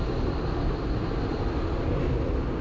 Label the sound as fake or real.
real